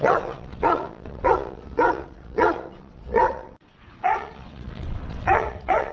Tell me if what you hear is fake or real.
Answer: fake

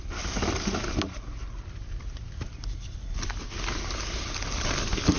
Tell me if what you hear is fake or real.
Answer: real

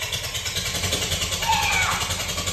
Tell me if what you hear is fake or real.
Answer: real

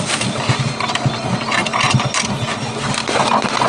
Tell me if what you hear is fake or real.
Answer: real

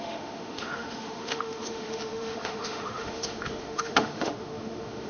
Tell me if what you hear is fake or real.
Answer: fake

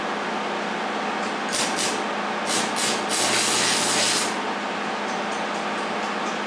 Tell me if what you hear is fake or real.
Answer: real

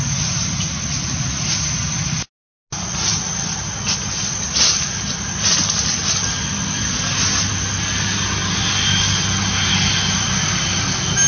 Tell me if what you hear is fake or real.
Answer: real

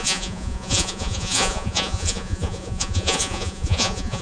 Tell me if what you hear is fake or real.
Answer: fake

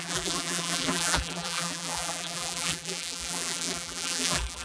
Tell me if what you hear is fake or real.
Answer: fake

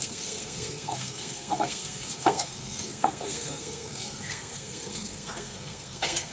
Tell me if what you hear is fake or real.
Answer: fake